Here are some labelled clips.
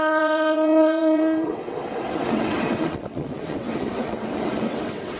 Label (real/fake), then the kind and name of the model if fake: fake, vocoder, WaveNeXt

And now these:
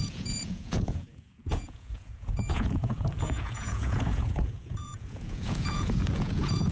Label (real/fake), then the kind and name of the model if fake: fake, vocoder, Vocos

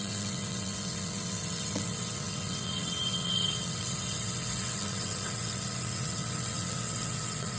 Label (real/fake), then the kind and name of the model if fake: fake, vocoder, WaveNeXt